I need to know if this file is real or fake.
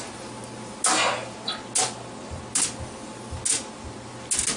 real